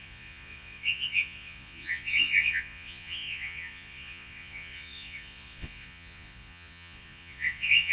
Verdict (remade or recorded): remade